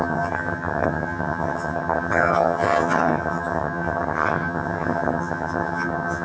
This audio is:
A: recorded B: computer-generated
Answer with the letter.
B